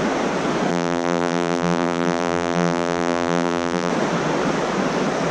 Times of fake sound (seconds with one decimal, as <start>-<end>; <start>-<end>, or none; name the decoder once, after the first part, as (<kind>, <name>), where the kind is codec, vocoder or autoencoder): 0.7-3.9 (vocoder, BigVGAN v2)